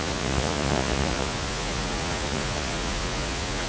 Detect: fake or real fake